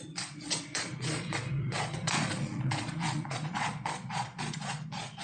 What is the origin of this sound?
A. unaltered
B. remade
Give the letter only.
B